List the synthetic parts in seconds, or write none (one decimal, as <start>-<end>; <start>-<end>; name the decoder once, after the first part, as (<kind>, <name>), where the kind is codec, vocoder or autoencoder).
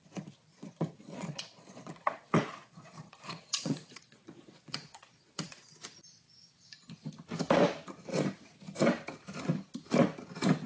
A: 0.5-5.6 (vocoder, Vocos)